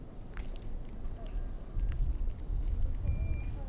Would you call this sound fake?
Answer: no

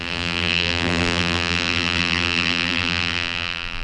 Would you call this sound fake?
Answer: yes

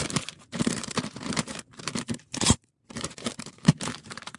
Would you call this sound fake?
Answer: yes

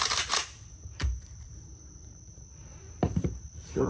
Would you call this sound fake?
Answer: yes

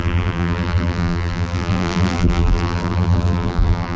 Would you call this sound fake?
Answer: yes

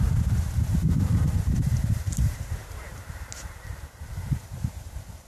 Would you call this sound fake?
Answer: yes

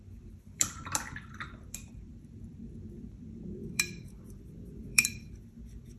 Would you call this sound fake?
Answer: yes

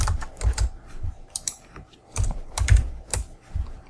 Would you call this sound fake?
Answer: yes